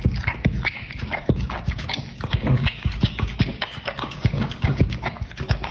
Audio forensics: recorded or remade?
remade